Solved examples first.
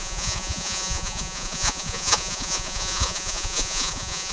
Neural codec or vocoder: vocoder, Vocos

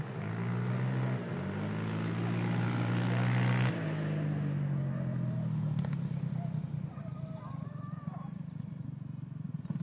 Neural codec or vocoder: none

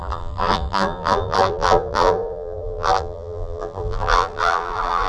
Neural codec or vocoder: vocoder, BigVGAN v2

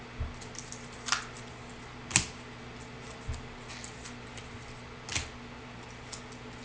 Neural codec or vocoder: none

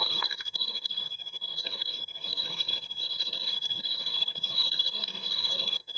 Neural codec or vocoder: codec, SNAC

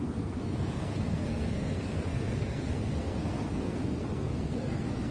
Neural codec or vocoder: codec, SNAC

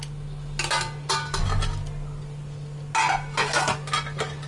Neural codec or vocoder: none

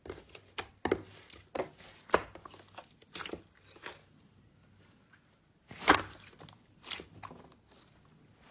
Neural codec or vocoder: none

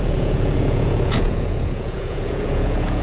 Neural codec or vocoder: vocoder, Vocos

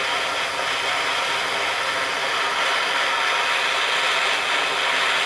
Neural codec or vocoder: none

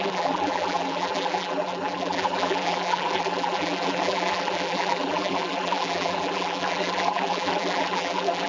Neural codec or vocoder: vocoder, BigVGAN v2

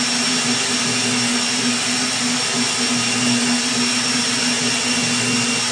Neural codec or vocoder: none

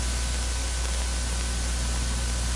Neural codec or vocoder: none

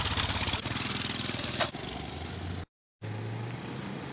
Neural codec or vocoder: none